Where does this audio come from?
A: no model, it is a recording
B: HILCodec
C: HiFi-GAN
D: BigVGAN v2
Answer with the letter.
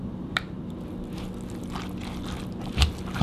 A